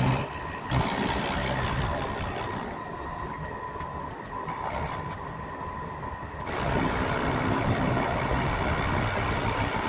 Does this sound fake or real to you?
real